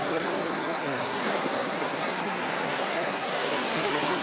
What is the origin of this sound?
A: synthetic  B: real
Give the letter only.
A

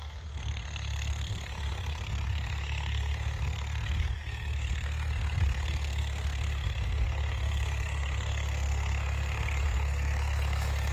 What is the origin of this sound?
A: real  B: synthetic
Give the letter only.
B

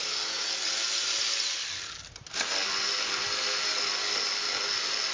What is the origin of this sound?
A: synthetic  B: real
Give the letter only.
B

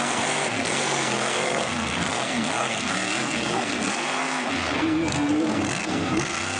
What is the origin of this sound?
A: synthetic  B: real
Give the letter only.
A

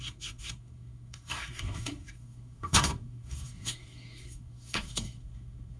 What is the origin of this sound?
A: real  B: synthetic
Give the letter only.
B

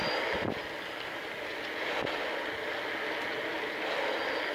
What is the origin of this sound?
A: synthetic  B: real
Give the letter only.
B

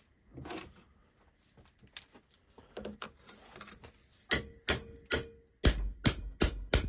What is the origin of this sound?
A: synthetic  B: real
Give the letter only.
B